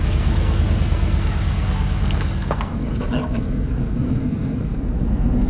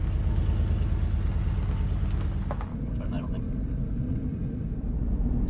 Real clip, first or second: second